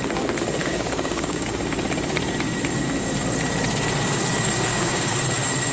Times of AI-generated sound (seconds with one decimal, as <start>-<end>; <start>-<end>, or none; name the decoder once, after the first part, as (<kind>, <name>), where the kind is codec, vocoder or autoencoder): 0.6-1.6 (codec, DAC); 4.7-5.2